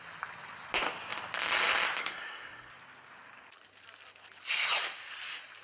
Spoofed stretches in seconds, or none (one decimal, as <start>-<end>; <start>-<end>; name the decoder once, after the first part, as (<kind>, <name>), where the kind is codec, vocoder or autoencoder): 2.0-2.7 (codec, SNAC)